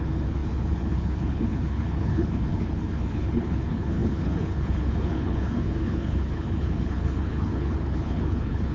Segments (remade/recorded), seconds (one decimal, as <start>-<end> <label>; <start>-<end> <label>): 0.0-8.7 remade